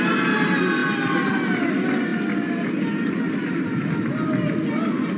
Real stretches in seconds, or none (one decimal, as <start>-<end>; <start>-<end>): 0.0-5.2